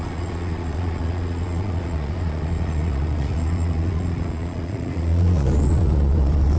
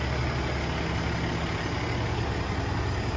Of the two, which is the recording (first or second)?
second